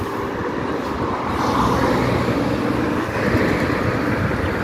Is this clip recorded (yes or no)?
yes